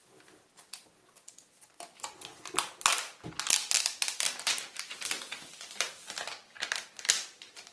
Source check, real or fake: real